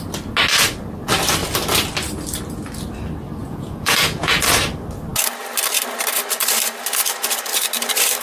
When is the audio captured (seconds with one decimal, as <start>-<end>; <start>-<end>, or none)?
0.0-3.4; 4.4-8.2